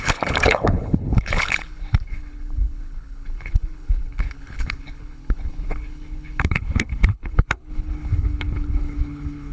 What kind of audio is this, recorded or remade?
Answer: remade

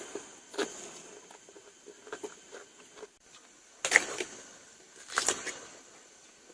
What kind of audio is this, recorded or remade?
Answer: recorded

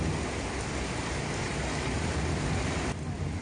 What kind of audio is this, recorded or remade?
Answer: recorded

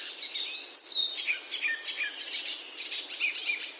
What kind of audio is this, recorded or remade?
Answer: recorded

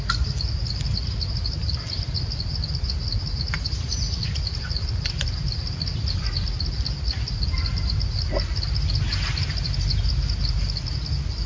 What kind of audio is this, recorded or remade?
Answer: recorded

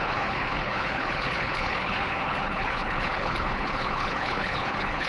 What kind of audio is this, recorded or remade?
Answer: remade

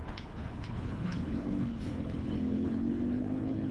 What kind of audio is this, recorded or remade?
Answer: remade